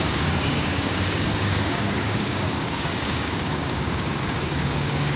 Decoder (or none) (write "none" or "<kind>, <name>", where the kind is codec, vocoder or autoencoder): codec, DAC